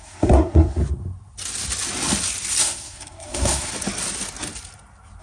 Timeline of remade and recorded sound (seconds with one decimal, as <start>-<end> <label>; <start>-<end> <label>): 0.0-0.8 remade; 0.8-2.6 recorded; 2.6-3.7 remade; 3.7-5.2 recorded